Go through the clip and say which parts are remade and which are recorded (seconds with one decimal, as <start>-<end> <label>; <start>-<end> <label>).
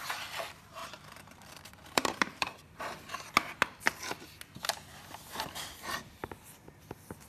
0.0-0.8 recorded; 0.8-2.8 remade; 2.8-7.3 recorded